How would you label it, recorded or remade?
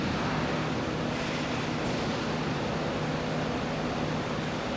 recorded